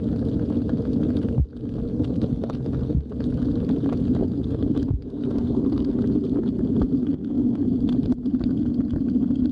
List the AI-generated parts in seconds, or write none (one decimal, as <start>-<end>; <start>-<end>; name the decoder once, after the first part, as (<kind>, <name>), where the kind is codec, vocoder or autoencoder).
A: 1.9-3.1 (codec, SNAC); 4.2-6.0; 7.0-7.6